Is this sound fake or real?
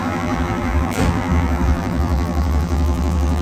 fake